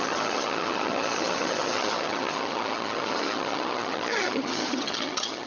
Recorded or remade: remade